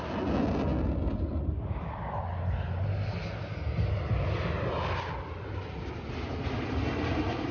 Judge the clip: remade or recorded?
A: recorded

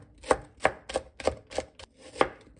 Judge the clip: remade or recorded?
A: recorded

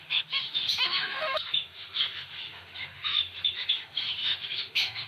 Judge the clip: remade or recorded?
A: remade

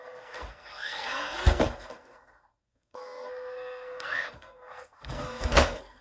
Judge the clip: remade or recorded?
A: remade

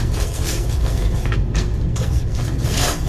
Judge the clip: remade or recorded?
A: remade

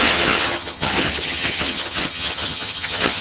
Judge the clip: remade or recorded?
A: remade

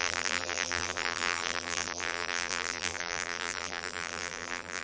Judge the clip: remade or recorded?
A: remade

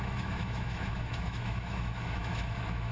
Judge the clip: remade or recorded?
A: remade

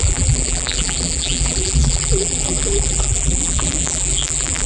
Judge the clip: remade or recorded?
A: remade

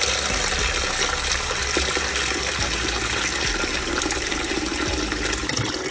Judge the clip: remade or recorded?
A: recorded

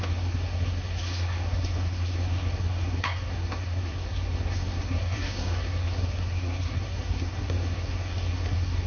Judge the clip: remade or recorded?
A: remade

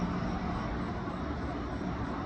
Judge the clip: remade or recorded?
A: recorded